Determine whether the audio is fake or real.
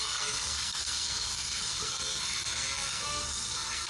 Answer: fake